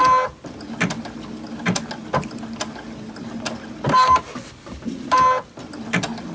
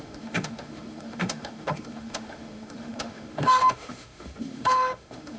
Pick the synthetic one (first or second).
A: second